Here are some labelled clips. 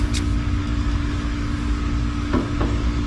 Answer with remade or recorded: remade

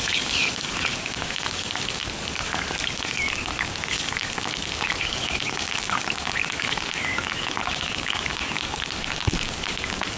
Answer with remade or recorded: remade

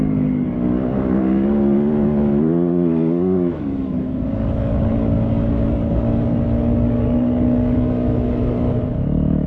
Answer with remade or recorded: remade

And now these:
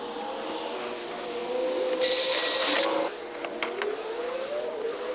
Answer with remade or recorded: recorded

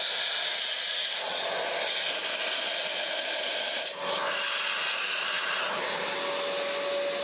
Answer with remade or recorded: recorded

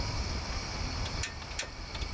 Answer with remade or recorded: recorded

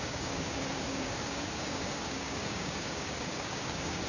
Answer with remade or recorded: remade